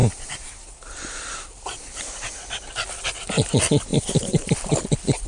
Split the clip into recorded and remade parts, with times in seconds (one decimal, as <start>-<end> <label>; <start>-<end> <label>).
0.0-2.7 remade; 2.7-3.9 recorded; 3.9-4.5 remade; 4.5-5.3 recorded